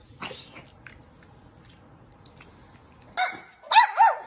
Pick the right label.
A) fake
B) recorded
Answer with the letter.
B